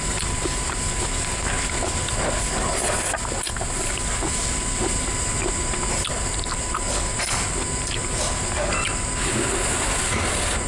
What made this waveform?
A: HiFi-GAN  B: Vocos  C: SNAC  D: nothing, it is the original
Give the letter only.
D